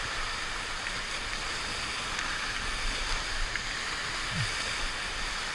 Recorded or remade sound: recorded